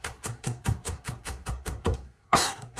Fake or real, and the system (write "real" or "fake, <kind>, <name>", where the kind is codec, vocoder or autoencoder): fake, codec, SNAC